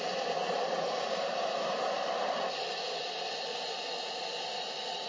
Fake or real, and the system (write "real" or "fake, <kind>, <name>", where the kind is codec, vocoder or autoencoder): real